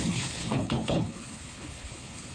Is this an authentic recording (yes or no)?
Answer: no